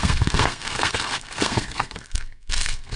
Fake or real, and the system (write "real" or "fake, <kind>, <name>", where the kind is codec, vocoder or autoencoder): fake, codec, SNAC